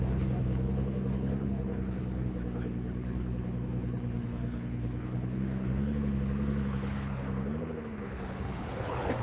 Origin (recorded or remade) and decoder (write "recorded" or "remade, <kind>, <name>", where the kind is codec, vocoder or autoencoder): remade, codec, HILCodec